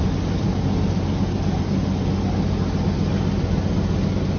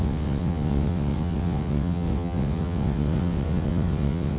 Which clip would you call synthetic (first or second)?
second